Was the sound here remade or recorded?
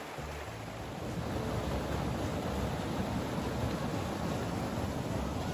recorded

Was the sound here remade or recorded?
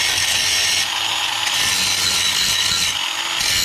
recorded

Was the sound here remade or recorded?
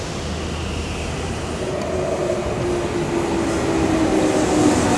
recorded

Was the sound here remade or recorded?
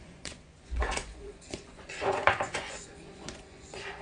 remade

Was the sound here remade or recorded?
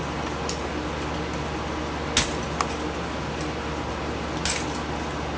recorded